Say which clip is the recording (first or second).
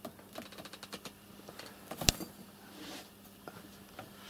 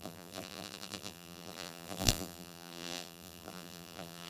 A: first